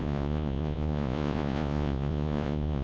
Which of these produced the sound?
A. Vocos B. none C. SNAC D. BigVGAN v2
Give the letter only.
A